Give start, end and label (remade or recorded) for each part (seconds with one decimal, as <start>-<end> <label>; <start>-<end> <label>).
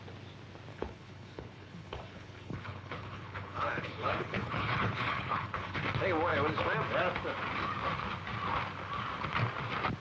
0.0-0.7 recorded; 0.7-5.8 remade; 5.8-10.0 recorded